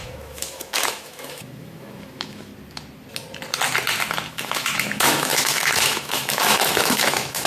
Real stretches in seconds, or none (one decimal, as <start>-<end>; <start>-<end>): 2.5-4.3